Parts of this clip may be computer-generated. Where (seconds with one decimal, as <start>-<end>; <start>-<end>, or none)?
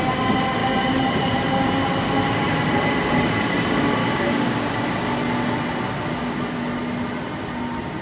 4.0-4.7